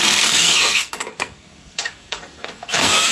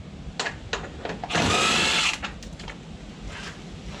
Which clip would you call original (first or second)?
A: second